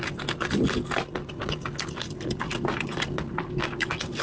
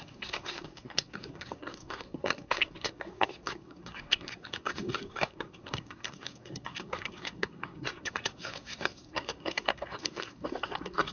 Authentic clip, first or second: first